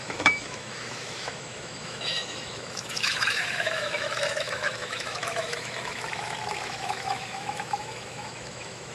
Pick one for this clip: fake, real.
fake